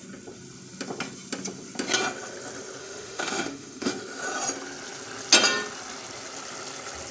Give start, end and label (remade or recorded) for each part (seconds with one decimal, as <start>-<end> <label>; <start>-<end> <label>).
0.0-2.8 recorded; 2.8-3.9 remade; 3.9-7.1 recorded